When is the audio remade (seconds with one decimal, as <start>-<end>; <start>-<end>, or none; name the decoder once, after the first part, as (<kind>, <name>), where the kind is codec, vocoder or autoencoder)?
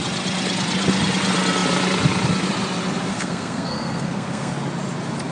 3.1-4.5 (codec, SNAC)